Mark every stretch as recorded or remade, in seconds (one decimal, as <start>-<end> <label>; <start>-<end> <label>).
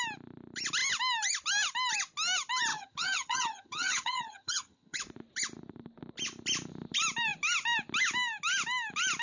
0.0-2.7 recorded; 2.7-5.0 remade; 5.0-9.2 recorded